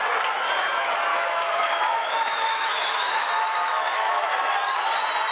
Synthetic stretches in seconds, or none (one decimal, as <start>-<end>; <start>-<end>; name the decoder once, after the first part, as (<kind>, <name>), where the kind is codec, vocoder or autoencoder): 1.1-4.3 (autoencoder, DAC-VAE)

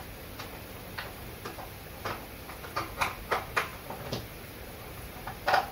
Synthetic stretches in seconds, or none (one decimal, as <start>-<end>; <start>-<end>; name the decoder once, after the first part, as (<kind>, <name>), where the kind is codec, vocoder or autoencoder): none

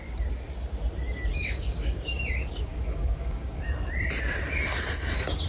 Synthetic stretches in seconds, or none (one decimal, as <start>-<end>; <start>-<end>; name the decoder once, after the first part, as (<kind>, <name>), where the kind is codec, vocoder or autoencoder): 1.3-2.2 (codec, DAC); 2.7-3.6

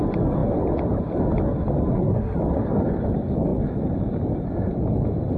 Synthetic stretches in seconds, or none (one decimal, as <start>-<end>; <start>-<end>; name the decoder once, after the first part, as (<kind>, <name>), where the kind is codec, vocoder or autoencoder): 1.9-2.4 (codec, SNAC)